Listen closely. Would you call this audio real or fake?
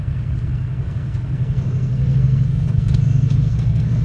fake